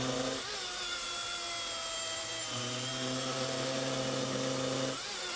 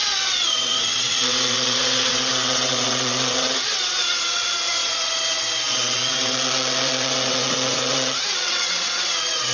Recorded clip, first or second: first